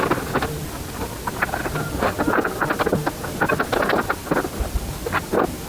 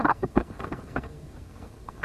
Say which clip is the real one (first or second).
first